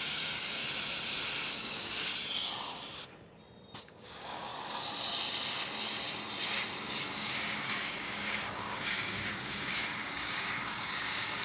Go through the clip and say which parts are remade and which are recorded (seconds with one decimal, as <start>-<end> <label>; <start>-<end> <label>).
0.0-0.6 remade; 0.6-1.5 recorded; 1.5-2.1 remade; 2.1-3.8 recorded; 3.8-4.5 remade; 4.5-6.9 recorded; 6.9-11.4 remade